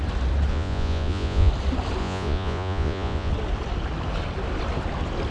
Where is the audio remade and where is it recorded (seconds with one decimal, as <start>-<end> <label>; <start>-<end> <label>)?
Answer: 0.0-0.5 recorded; 0.5-1.5 remade; 1.5-2.0 recorded; 2.0-3.3 remade; 3.3-5.3 recorded